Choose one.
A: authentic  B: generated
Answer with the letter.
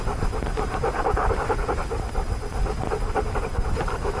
B